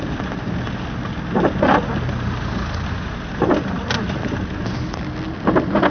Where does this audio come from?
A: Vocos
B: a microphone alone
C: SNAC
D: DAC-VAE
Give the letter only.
B